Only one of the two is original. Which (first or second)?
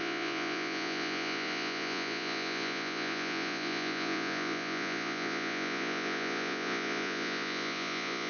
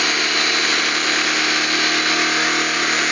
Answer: second